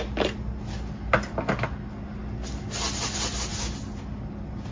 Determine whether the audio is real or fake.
real